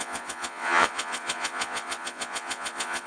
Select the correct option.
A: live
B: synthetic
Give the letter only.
B